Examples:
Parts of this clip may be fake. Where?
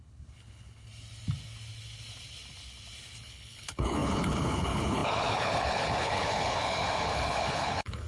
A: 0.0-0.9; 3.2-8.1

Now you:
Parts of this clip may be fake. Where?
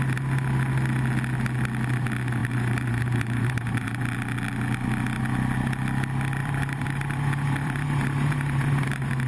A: 2.4-4.0; 6.4-9.3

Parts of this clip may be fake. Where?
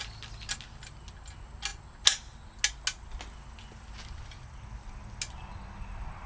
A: none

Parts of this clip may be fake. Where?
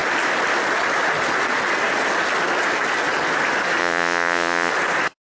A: 3.8-4.7